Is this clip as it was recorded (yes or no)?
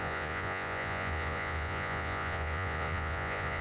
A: no